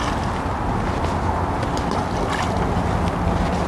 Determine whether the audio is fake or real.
real